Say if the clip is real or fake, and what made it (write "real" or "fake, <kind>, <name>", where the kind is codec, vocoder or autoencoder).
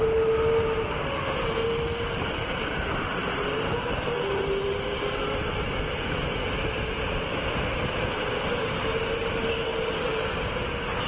real